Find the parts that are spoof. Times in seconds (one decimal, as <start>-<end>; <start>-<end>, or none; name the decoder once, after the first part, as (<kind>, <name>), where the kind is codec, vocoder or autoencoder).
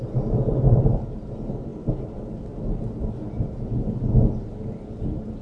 none